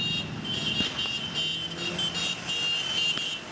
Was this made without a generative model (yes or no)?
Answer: yes